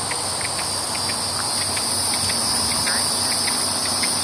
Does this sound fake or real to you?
real